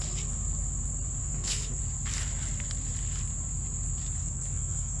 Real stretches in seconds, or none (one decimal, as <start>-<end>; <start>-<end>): 0.0-1.2; 1.8-4.2